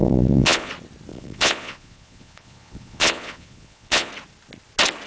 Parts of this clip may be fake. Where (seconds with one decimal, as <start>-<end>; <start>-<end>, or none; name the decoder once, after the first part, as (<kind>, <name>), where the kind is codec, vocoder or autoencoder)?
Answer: 0.0-0.7 (vocoder, Vocos); 1.1-4.1